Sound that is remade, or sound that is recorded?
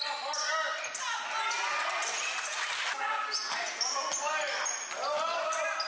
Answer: recorded